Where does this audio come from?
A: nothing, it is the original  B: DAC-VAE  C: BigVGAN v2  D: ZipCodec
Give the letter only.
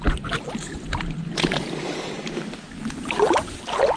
A